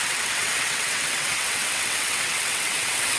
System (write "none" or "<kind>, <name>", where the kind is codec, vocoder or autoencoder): vocoder, WaveNeXt